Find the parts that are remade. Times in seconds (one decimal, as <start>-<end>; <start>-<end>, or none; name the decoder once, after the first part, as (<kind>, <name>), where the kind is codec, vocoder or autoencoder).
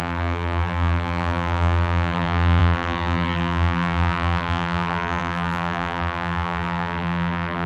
0.0-7.7 (vocoder, BigVGAN v2)